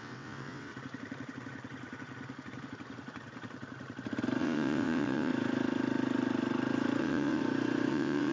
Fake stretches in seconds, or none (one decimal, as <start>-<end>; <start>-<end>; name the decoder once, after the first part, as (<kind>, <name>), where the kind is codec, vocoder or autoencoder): 0.0-0.7 (vocoder, WaveNeXt); 4.4-5.3; 7.0-7.4; 7.9-8.3